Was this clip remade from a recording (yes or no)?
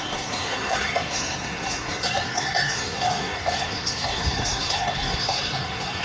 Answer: yes